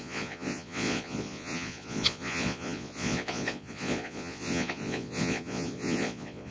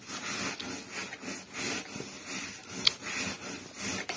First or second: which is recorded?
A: second